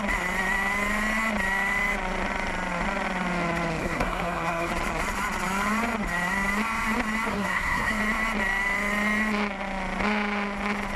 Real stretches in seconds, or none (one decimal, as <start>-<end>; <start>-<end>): 0.0-3.8; 4.7-7.3; 8.0-11.0